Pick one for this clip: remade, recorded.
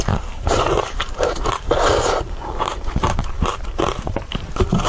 remade